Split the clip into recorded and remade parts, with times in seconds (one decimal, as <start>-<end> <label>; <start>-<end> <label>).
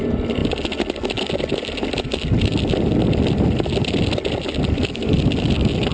0.0-5.9 recorded